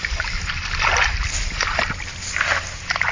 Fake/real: real